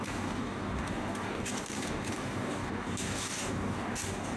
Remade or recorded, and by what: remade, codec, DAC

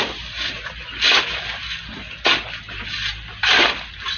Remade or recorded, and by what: recorded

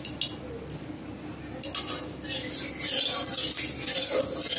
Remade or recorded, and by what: recorded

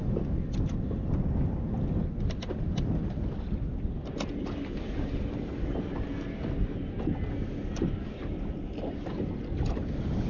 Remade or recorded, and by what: recorded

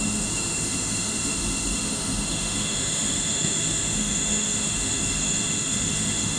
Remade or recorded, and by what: remade, autoencoder, DAC-VAE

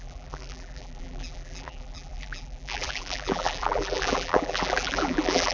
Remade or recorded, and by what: remade, vocoder, BigVGAN v2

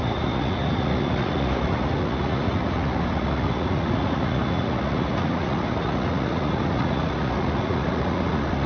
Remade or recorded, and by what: remade, vocoder, Vocos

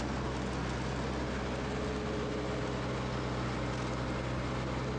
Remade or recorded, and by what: recorded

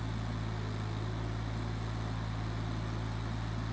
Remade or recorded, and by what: recorded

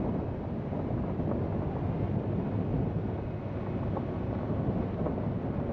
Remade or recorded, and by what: recorded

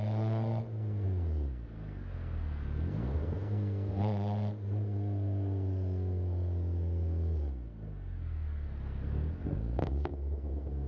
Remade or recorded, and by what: remade, codec, SNAC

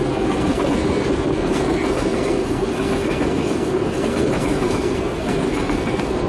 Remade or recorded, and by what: remade, codec, SNAC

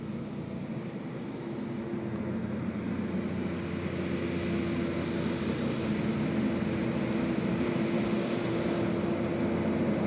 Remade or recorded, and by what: recorded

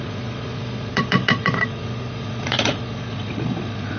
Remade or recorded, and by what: remade, vocoder, Vocos